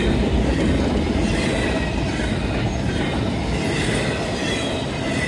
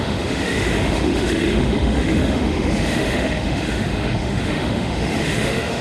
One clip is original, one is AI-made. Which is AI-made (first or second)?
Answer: second